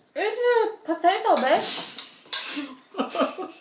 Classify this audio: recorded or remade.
recorded